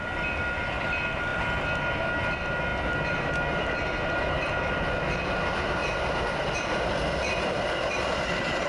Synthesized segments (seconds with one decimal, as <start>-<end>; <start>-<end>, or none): none